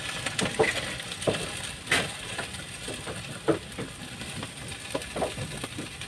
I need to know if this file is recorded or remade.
recorded